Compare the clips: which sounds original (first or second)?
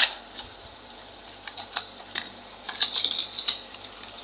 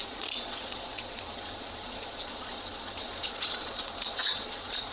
first